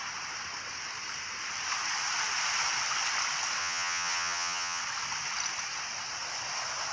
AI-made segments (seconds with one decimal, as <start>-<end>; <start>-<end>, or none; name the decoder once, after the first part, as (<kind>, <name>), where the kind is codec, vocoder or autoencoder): 3.6-4.8 (vocoder, HiFi-GAN)